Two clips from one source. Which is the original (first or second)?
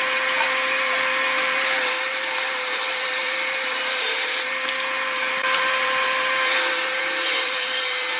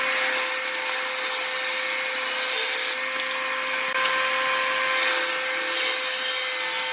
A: second